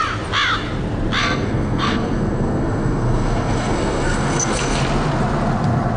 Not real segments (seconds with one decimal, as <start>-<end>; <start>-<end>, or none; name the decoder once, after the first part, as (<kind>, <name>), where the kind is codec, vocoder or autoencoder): 1.2-4.8 (codec, SNAC)